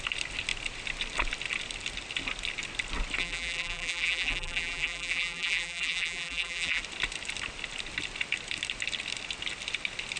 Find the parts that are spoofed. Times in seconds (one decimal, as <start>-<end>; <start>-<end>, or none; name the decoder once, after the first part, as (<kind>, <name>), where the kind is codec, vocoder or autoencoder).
3.2-6.8 (vocoder, BigVGAN v2)